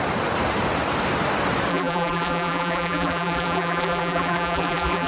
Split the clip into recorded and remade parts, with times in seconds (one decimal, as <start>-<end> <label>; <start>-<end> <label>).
0.0-1.7 recorded; 1.7-5.1 remade